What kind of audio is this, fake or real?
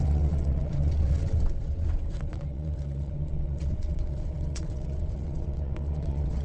fake